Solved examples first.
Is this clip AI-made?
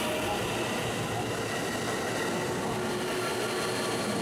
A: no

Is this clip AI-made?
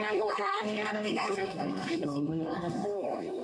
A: yes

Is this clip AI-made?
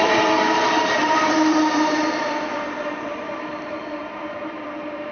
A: yes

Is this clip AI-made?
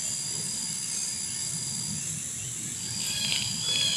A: no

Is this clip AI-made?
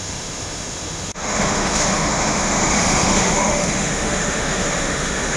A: yes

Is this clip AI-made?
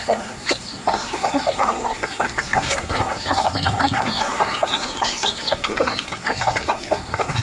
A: yes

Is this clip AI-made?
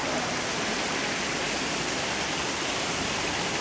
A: no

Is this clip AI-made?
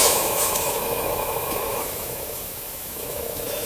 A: yes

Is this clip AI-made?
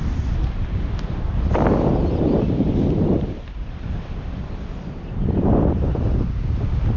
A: yes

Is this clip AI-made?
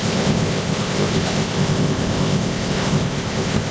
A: yes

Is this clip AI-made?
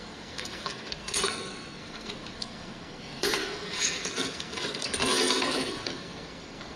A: yes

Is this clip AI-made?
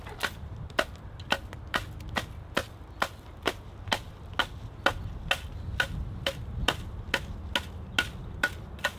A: no